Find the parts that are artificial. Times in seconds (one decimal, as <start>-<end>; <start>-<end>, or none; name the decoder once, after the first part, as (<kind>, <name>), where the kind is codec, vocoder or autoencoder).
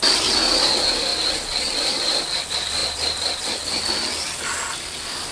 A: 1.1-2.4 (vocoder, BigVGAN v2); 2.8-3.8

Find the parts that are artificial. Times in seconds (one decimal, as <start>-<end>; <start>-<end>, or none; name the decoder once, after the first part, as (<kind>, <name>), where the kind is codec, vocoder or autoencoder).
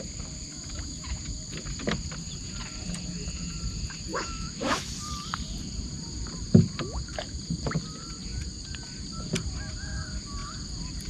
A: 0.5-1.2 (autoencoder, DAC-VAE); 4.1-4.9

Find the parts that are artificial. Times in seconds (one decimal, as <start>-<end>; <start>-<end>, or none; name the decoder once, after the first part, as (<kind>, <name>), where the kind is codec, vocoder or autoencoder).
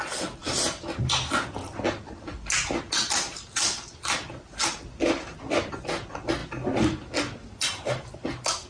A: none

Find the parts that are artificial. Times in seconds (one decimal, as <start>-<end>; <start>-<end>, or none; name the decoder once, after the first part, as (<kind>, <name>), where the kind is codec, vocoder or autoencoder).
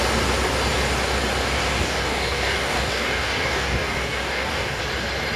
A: 1.6-4.8 (codec, DAC)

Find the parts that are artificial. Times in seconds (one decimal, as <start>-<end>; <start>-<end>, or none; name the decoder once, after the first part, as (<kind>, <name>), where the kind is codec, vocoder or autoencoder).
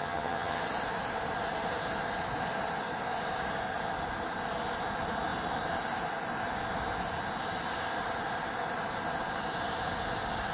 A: 0.0-0.6 (vocoder, HiFi-GAN)